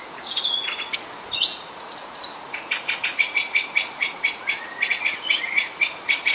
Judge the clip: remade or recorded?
remade